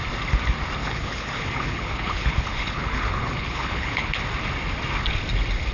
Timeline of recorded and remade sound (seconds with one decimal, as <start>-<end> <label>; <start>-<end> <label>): 0.0-0.8 recorded; 0.8-4.2 remade; 4.2-5.7 recorded